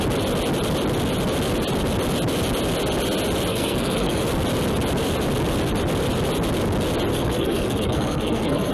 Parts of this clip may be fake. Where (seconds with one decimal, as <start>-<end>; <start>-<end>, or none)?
3.5-4.2; 7.1-8.7